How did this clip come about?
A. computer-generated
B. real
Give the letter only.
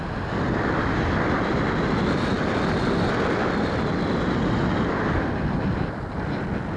B